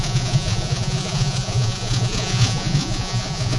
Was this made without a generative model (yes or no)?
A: no